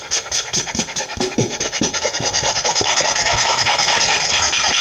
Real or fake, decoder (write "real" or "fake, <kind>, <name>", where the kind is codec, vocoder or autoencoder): fake, codec, SNAC